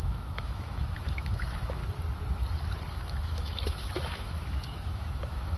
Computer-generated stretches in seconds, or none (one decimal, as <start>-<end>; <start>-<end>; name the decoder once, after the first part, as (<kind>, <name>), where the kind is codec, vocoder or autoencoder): 0.0-1.8 (autoencoder, DAC-VAE); 2.9-5.6